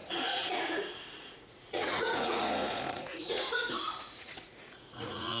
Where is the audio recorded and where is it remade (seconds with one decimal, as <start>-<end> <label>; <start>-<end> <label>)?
0.0-5.4 remade